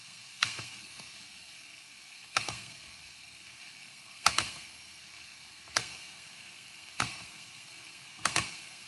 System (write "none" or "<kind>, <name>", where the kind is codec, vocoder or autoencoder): codec, SNAC